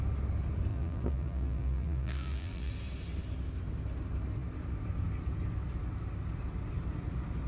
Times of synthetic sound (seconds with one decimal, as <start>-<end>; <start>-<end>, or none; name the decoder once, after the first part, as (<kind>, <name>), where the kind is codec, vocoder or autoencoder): 0.7-2.7 (vocoder, BigVGAN v2)